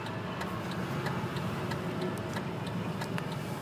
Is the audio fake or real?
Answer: real